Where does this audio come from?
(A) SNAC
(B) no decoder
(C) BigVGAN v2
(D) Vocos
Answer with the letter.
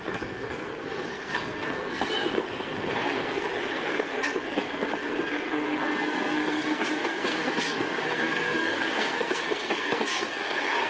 A